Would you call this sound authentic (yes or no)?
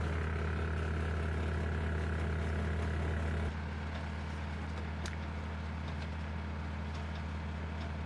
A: yes